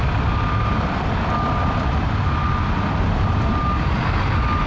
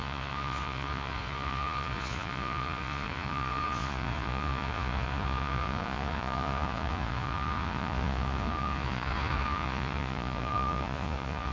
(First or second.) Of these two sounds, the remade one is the second